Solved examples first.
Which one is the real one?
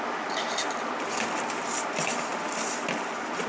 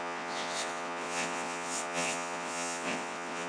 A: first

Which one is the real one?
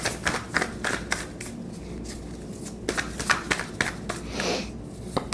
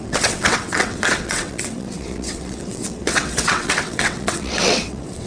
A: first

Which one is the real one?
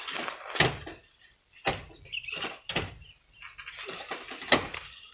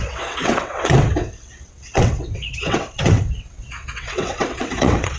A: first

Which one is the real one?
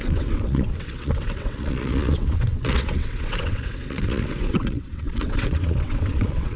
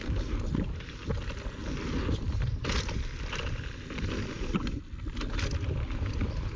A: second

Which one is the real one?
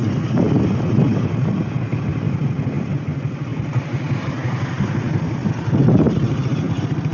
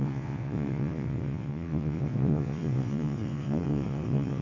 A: first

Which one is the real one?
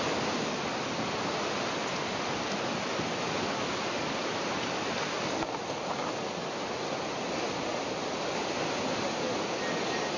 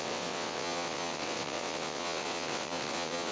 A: first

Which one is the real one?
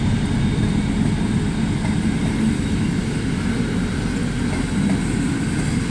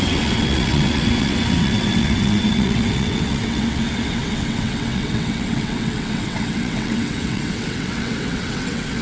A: first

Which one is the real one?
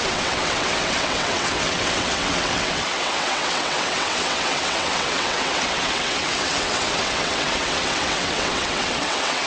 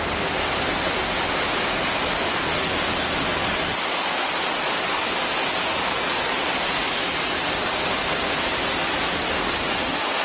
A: second